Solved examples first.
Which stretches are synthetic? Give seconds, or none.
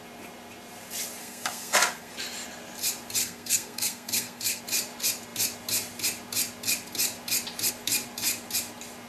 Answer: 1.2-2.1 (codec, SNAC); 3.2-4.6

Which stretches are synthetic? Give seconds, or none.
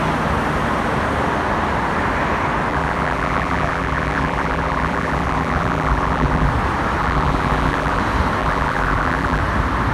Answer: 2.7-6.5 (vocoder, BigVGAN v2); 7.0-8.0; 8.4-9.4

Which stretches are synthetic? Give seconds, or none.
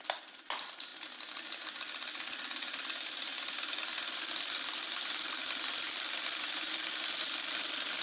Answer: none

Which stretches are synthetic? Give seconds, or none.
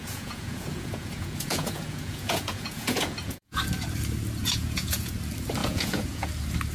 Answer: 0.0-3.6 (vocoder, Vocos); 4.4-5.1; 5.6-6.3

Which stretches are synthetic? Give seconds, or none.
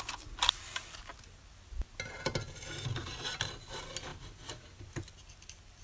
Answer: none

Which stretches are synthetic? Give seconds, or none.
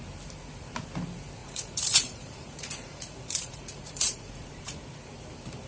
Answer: 1.4-4.8 (vocoder, Vocos)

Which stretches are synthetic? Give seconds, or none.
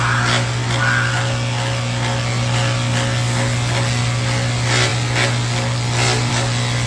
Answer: none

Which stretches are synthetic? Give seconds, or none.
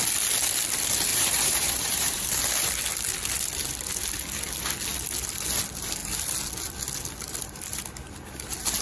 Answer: 1.1-2.3 (vocoder, BigVGAN v2)